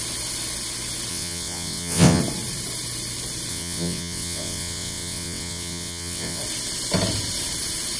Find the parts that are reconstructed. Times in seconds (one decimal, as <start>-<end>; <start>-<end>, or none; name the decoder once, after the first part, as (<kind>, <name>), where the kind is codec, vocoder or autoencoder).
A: 1.1-2.2 (vocoder, WaveNeXt); 3.5-6.4